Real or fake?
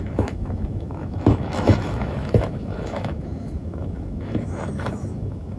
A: fake